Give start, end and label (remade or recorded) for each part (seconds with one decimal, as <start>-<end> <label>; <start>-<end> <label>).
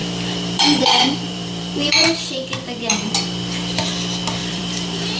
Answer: 0.0-3.1 remade; 3.1-4.4 recorded; 4.4-5.2 remade